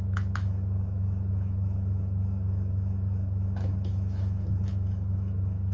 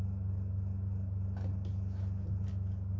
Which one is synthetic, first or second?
first